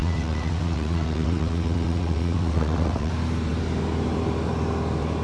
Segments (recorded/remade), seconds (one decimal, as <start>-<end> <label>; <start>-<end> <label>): 0.0-3.1 remade; 3.1-5.2 recorded